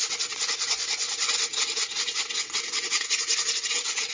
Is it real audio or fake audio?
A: fake